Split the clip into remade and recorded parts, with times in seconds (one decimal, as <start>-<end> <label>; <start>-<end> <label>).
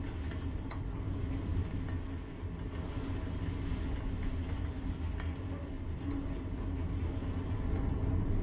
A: 0.0-8.4 recorded